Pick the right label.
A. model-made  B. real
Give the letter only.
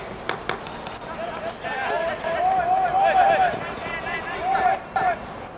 B